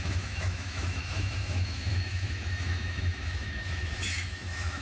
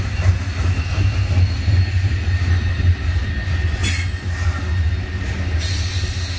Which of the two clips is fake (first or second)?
first